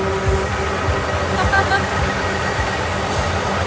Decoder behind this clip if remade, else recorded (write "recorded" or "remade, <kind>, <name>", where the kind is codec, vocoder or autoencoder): recorded